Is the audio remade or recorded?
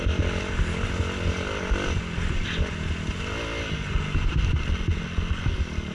recorded